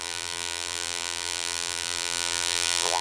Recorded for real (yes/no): no